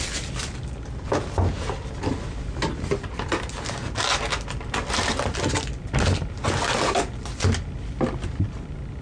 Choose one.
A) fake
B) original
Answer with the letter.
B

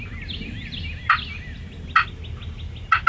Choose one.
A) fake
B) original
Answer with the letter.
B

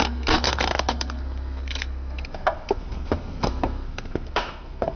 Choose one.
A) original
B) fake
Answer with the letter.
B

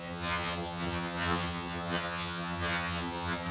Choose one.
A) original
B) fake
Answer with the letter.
B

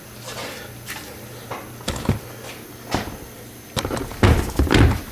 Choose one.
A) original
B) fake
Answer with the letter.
A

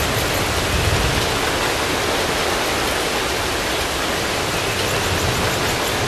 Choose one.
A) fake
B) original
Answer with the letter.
B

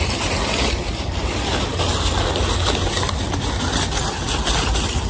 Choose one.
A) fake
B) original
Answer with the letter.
B